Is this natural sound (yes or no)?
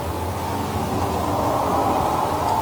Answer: yes